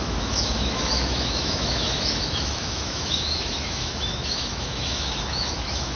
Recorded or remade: remade